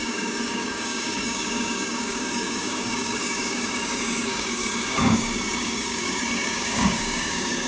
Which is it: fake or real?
fake